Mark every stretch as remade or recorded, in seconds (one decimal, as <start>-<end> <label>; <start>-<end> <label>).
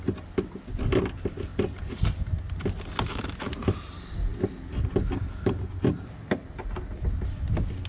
0.0-7.9 recorded